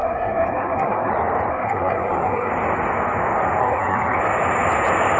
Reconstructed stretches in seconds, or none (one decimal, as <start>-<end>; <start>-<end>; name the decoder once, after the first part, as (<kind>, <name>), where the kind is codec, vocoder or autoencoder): 0.0-1.1 (codec, SNAC); 1.5-2.5; 3.6-4.2

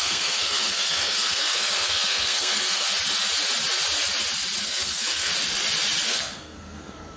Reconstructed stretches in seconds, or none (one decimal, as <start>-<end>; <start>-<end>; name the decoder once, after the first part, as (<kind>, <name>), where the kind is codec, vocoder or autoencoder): 0.0-2.9 (codec, SNAC); 4.6-5.3; 6.1-7.2